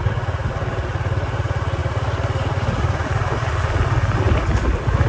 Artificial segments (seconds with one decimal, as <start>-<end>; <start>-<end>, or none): none